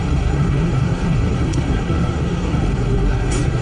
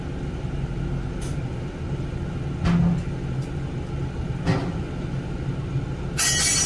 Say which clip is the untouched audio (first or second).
second